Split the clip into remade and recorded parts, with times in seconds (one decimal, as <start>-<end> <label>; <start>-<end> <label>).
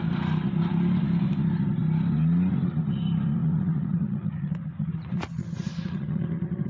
0.0-3.4 recorded; 3.4-6.7 remade